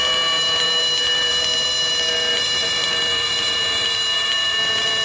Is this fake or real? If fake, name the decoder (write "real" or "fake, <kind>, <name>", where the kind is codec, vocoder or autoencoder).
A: fake, vocoder, BigVGAN v2